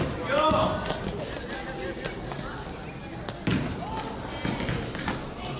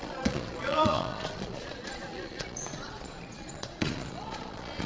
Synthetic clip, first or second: second